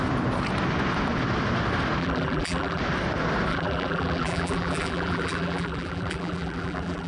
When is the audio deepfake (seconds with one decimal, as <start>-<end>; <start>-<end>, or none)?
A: 2.0-2.8; 3.5-7.1